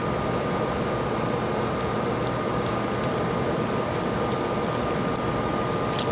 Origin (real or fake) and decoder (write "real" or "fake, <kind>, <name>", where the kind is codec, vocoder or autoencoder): real